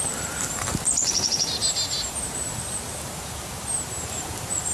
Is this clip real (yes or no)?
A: no